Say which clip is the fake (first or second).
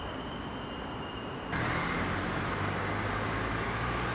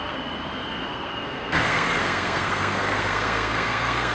second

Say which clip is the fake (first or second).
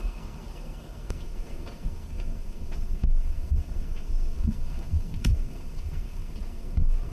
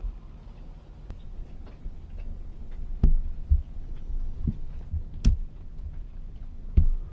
first